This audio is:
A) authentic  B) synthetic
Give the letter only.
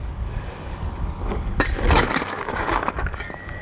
B